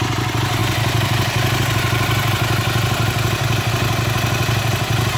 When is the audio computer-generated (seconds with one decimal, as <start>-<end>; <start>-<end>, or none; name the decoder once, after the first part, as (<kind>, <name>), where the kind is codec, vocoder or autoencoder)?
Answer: none